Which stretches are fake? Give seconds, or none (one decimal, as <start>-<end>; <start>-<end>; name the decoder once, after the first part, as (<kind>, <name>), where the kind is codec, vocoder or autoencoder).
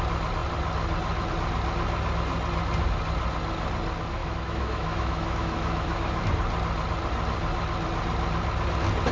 4.2-6.3 (autoencoder, DAC-VAE)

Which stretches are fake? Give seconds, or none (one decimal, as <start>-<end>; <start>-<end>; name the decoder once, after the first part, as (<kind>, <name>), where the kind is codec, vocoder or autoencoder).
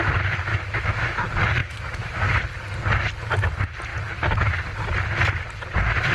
0.5-1.2 (autoencoder, DAC-VAE); 1.6-2.3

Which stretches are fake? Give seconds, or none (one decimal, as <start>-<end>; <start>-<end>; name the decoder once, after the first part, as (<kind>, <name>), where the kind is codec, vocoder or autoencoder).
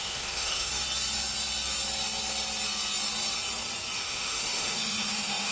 0.0-0.7 (autoencoder, DAC-VAE); 4.0-5.5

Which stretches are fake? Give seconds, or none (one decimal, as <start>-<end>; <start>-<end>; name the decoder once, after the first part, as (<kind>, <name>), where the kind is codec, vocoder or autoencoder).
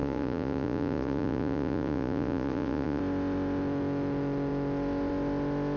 0.0-3.0 (vocoder, Vocos)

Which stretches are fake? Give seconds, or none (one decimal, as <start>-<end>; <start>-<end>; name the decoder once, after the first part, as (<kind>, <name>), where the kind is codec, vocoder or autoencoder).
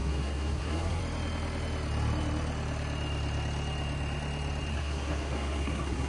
0.0-1.0 (codec, SNAC); 4.7-6.1